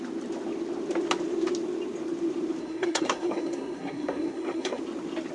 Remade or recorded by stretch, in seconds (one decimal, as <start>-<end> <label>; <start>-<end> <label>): 0.0-2.6 recorded; 2.6-4.8 remade; 4.8-5.3 recorded